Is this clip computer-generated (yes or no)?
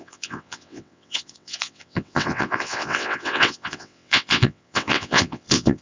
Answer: yes